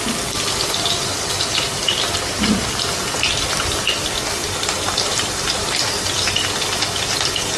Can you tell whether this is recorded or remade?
recorded